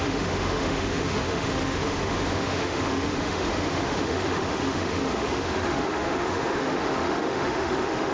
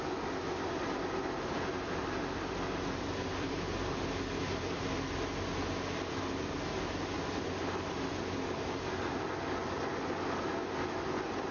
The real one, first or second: second